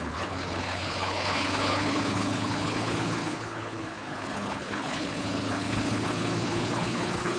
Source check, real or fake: fake